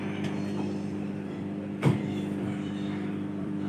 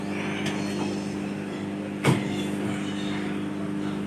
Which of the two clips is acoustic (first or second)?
second